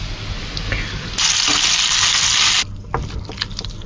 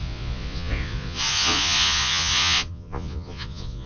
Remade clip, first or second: second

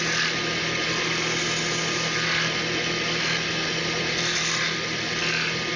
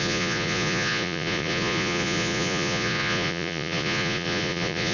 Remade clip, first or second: second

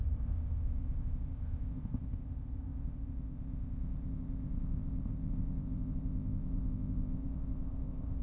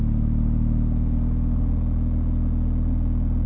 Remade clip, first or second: first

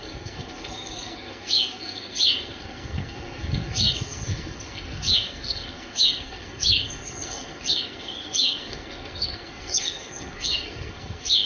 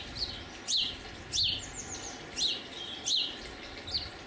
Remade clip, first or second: first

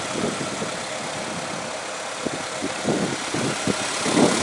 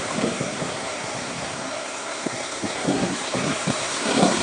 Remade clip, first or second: second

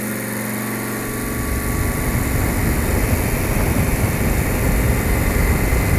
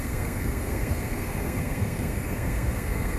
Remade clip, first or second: second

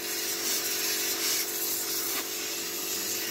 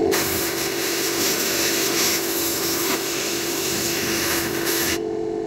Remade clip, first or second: second